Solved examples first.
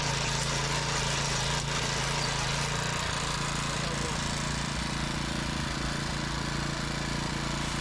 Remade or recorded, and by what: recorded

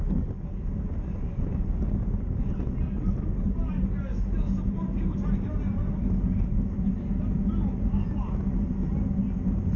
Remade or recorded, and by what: recorded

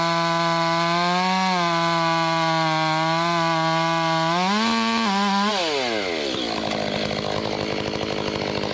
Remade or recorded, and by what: recorded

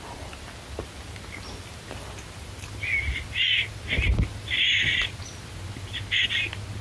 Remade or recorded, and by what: recorded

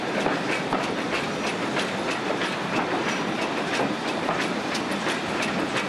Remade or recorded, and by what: remade, vocoder, BigVGAN v2